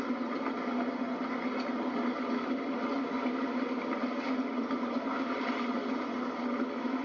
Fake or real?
real